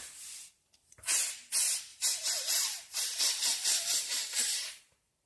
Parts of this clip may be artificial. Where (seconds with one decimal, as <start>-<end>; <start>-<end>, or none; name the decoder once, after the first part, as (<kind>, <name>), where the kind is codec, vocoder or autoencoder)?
1.9-5.3 (vocoder, BigVGAN v2)